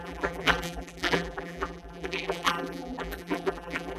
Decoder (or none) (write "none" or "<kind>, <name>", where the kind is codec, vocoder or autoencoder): vocoder, BigVGAN v2